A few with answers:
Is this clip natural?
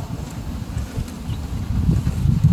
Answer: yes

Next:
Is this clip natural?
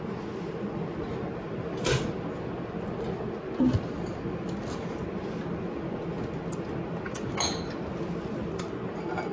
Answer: yes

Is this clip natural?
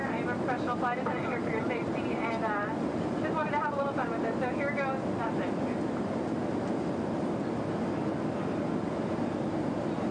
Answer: yes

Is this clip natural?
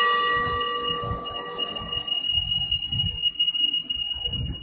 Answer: yes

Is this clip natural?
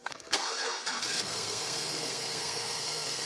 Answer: no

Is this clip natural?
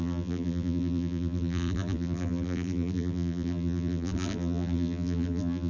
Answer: no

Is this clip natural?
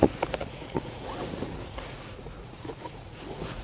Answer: no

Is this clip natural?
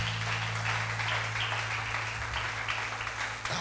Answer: yes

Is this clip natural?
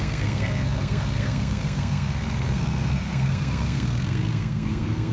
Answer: no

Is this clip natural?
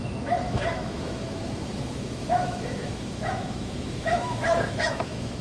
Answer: no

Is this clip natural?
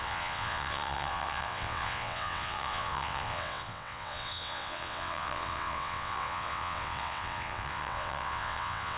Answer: no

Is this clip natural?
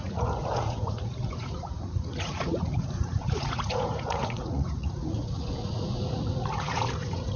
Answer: no